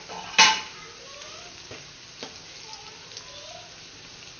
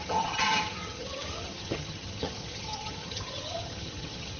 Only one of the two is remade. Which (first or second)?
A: second